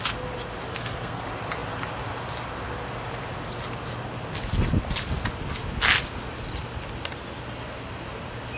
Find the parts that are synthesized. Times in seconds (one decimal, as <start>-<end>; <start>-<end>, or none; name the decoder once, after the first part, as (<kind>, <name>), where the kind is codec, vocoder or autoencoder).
0.7-1.2 (codec, SNAC)